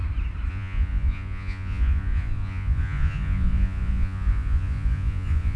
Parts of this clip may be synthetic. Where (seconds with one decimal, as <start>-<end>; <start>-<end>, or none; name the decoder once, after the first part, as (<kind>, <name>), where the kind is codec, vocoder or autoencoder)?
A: 0.5-5.6 (vocoder, Vocos)